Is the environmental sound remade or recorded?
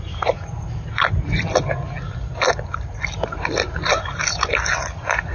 recorded